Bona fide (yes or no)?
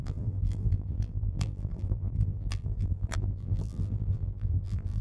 no